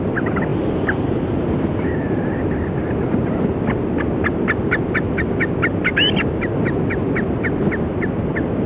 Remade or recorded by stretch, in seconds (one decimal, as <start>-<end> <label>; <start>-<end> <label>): 0.0-8.7 recorded